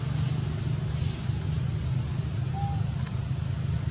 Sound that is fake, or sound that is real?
real